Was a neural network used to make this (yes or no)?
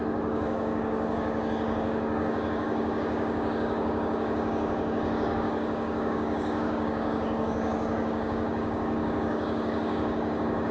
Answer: yes